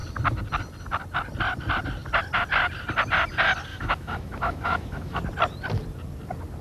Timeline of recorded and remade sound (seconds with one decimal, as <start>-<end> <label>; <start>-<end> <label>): 0.0-3.7 recorded; 3.7-5.2 remade; 5.2-6.6 recorded